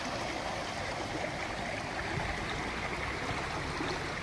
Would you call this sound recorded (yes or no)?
yes